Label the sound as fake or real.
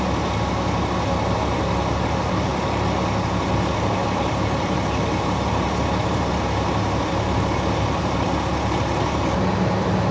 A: real